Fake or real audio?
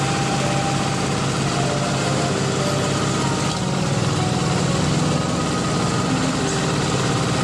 real